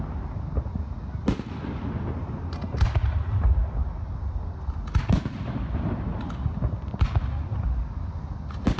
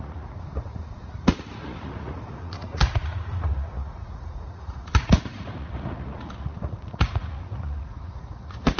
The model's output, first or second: second